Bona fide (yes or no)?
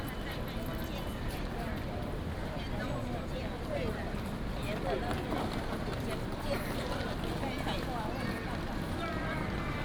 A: yes